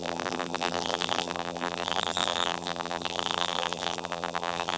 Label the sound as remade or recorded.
remade